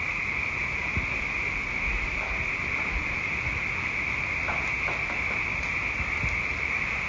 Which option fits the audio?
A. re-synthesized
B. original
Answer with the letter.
B